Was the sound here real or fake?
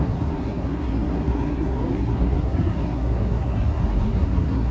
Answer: fake